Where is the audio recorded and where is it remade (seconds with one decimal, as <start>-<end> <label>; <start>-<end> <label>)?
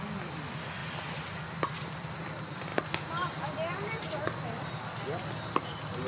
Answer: 0.0-6.1 recorded